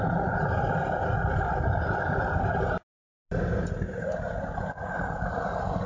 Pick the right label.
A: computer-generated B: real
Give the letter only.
B